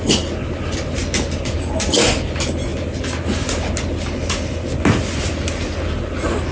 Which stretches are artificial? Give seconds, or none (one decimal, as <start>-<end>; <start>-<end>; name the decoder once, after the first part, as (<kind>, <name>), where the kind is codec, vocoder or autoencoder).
none